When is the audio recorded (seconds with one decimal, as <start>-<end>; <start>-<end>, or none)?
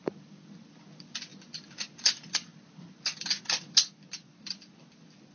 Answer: none